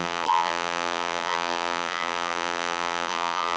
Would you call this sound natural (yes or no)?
no